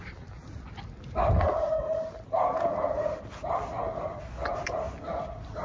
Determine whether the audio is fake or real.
real